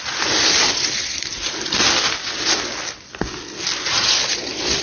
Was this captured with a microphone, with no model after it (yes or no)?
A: yes